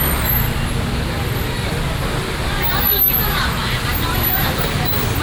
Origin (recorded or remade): recorded